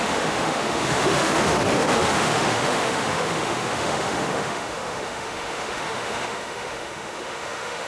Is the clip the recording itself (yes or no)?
no